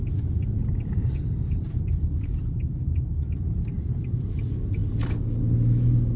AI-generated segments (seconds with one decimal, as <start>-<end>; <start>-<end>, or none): 0.6-4.3